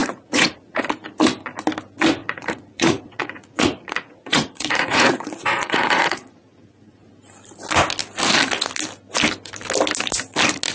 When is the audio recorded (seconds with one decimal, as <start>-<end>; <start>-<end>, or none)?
0.8-2.2; 7.1-10.7